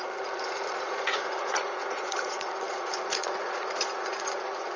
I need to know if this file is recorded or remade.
remade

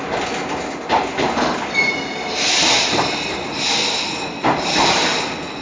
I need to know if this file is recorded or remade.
recorded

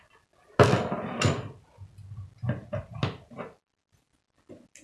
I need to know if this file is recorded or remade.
recorded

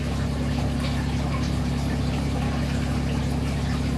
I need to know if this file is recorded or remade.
recorded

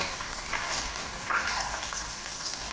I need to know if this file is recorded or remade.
remade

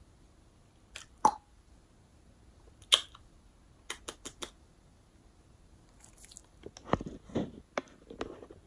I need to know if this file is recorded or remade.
recorded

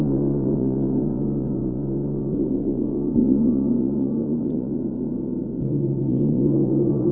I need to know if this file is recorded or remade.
remade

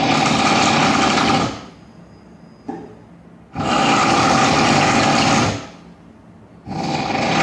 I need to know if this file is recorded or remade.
recorded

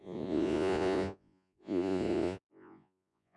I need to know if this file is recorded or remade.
remade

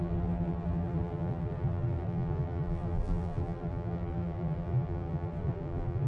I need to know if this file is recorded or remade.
remade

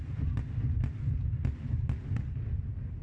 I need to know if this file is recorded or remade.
recorded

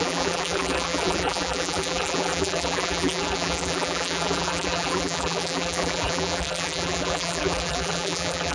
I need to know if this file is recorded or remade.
remade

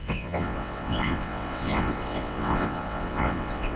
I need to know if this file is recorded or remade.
remade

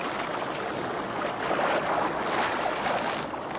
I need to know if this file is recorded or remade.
recorded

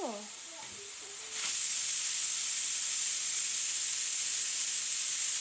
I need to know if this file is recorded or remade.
recorded